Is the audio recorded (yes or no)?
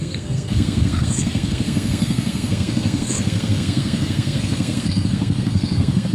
no